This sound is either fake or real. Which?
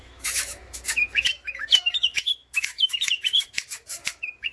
fake